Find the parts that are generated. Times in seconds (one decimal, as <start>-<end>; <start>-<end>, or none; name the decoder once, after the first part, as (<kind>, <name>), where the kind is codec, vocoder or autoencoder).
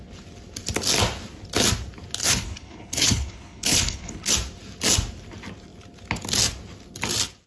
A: 2.2-4.3 (codec, HILCodec)